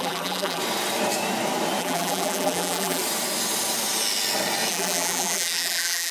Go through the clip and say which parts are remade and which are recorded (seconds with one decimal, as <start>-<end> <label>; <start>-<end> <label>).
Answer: 0.0-0.6 remade; 0.6-1.8 recorded; 1.8-3.0 remade; 3.0-4.7 recorded; 4.7-6.1 remade